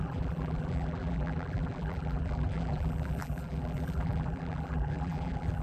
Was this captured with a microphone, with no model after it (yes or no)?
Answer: no